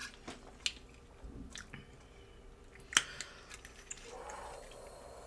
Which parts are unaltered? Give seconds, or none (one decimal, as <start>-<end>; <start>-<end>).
0.0-5.3